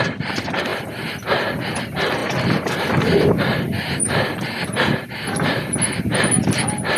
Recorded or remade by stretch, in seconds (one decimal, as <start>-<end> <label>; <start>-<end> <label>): 0.0-7.0 recorded